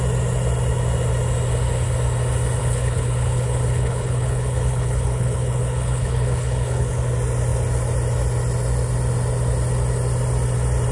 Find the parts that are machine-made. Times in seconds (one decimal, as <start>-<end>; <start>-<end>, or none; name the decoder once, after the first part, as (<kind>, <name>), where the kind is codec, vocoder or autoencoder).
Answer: 2.6-6.9 (codec, HILCodec)